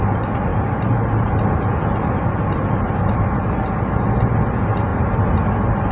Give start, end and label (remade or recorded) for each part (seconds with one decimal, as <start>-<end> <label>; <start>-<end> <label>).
0.0-5.9 recorded